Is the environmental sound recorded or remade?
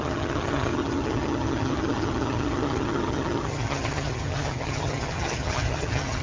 remade